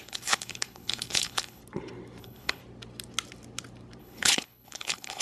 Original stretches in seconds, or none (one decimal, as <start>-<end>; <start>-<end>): 1.6-2.2; 2.6-4.0